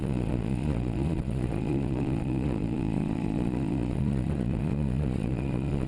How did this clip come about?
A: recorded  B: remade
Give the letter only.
B